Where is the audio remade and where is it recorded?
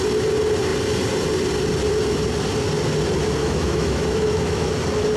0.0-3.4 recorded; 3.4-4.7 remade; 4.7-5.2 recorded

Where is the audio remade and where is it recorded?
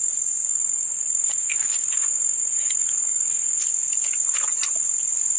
0.0-0.5 recorded; 0.5-3.7 remade; 3.7-5.4 recorded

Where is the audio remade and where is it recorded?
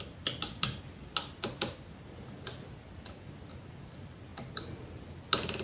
0.0-5.6 recorded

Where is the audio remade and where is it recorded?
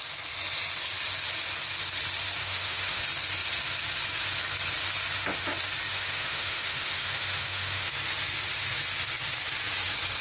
0.0-2.4 recorded; 2.4-3.0 remade; 3.0-5.9 recorded; 5.9-7.9 remade; 7.9-10.2 recorded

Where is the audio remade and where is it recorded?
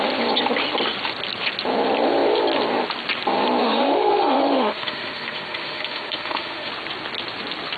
0.0-3.6 recorded; 3.6-6.7 remade; 6.7-7.8 recorded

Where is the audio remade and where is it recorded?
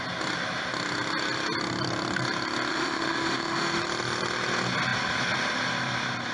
0.0-2.7 recorded; 2.7-3.8 remade; 3.8-6.3 recorded